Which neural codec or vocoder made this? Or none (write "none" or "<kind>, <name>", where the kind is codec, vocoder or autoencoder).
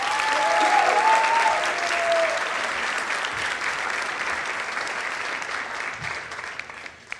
none